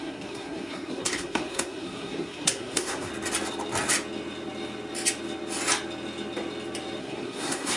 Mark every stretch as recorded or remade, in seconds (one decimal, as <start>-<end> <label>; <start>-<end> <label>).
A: 0.0-3.1 remade; 3.1-7.0 recorded; 7.0-7.8 remade